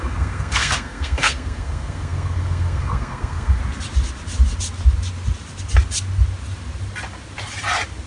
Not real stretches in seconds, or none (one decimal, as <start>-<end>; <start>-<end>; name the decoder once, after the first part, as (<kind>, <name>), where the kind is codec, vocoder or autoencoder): 0.0-3.6 (codec, SNAC)